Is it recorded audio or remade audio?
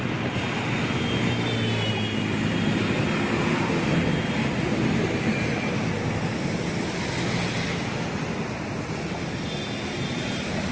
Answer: recorded